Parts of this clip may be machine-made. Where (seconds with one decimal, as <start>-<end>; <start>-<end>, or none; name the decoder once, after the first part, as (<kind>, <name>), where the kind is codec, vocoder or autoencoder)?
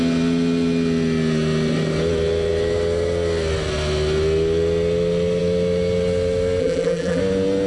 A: 6.6-7.2 (vocoder, BigVGAN v2)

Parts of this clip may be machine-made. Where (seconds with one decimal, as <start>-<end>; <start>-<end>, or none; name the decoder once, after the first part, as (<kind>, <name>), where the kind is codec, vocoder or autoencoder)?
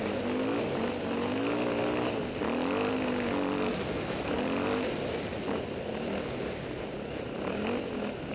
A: 3.7-4.4 (autoencoder, DAC-VAE)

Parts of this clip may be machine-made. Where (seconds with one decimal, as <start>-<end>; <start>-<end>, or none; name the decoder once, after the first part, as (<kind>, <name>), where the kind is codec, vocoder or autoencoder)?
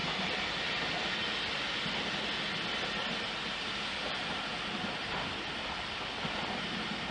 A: none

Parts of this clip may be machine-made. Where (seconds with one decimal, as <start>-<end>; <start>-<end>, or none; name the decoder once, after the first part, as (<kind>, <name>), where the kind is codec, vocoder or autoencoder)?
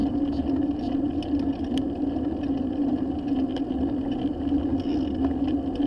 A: none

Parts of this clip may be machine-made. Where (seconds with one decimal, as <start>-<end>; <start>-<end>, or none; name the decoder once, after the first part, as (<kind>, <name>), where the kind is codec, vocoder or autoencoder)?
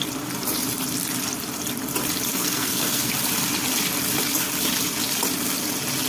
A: 2.3-3.1 (codec, SNAC)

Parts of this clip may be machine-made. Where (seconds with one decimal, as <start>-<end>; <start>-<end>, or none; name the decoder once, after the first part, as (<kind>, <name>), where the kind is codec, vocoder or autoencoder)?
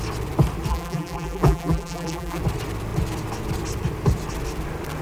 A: 0.7-2.4 (vocoder, BigVGAN v2)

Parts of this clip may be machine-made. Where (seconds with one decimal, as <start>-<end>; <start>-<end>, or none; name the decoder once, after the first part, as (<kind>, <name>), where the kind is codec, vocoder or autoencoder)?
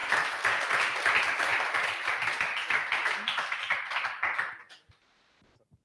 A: none